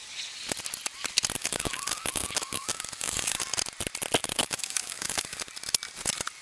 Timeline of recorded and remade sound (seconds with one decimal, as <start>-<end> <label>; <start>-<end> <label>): 0.0-1.4 recorded; 1.4-3.4 remade; 3.4-4.2 recorded; 4.2-5.4 remade; 5.4-6.4 recorded